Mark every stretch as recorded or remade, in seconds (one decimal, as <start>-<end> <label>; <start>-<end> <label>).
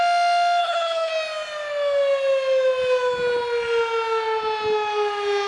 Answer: 0.0-0.6 recorded; 0.6-1.1 remade; 1.1-5.5 recorded